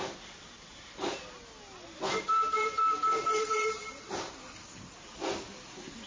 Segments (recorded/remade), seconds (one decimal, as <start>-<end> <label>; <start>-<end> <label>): 0.0-0.7 recorded; 0.7-1.2 remade; 1.2-2.8 recorded; 2.8-4.3 remade; 4.3-6.1 recorded